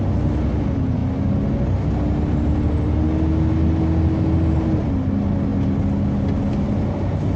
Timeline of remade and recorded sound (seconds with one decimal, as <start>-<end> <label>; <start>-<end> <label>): 0.0-7.4 recorded